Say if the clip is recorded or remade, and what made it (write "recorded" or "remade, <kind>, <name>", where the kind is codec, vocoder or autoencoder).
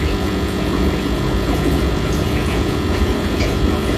remade, vocoder, Vocos